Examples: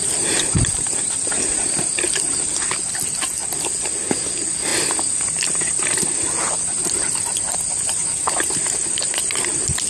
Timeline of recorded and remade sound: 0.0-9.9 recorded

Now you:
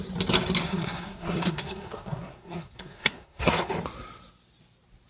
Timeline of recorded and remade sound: 0.0-0.6 recorded; 0.6-3.7 remade; 3.7-5.1 recorded

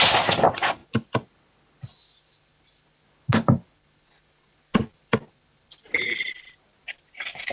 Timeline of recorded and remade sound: 0.0-7.5 recorded

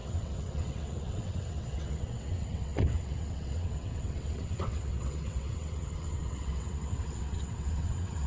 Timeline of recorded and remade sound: 0.0-8.3 remade

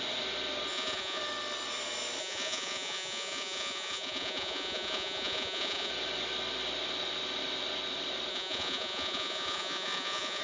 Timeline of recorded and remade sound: 0.0-0.7 recorded; 0.7-1.2 remade; 1.2-2.2 recorded; 2.2-5.9 remade; 5.9-8.3 recorded; 8.3-10.4 remade